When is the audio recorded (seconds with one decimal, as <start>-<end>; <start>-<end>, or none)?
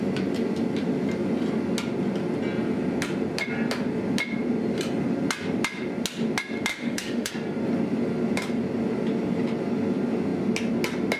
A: 0.0-6.7; 7.3-11.2